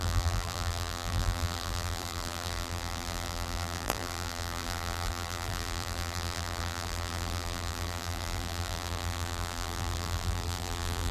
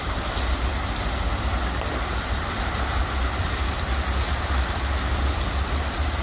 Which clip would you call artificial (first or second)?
first